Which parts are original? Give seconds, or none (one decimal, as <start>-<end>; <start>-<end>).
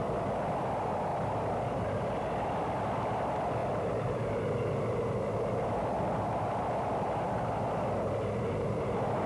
0.0-9.3